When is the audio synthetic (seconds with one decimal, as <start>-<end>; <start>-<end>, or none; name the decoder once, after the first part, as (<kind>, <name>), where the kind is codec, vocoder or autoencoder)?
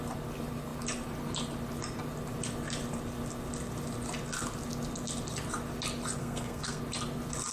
6.2-6.8 (codec, SNAC)